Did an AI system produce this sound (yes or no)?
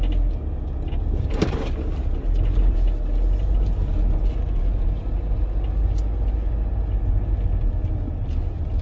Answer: no